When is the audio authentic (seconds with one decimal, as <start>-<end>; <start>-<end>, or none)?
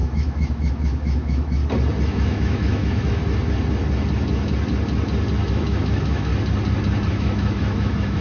1.6-2.1; 3.2-5.5; 6.3-7.1